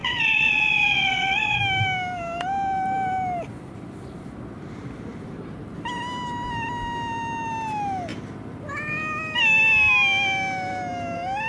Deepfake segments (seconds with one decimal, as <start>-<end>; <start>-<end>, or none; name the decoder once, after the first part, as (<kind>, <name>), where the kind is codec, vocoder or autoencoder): 0.0-1.6 (vocoder, WaveNeXt)